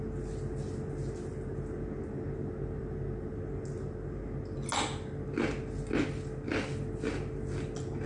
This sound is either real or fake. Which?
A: real